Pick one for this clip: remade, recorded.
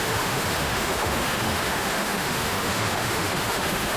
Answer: remade